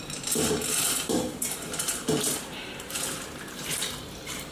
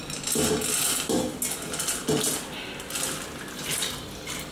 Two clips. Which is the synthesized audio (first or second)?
first